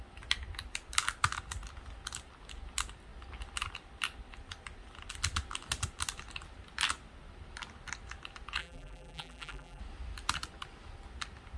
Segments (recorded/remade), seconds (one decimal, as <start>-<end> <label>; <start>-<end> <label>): 0.0-8.6 recorded; 8.6-9.8 remade; 9.8-11.6 recorded